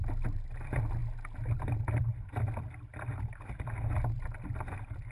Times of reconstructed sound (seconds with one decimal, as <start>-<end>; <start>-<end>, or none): none